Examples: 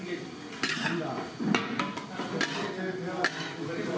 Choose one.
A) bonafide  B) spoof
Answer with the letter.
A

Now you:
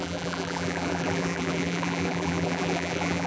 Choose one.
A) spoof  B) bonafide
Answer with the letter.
A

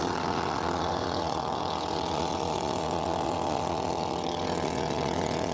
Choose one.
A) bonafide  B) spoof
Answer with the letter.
B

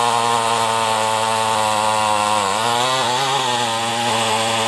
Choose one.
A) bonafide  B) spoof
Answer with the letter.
A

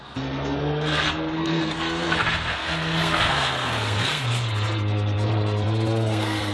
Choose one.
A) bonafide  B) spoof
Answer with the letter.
B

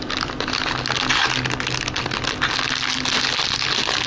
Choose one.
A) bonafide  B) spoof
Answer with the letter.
A